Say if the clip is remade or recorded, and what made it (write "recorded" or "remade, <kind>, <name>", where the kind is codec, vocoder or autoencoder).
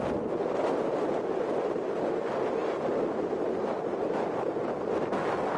recorded